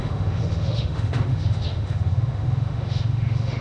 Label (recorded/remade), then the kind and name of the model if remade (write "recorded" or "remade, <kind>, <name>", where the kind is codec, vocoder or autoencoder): remade, autoencoder, DAC-VAE